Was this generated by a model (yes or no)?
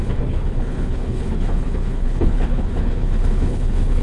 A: yes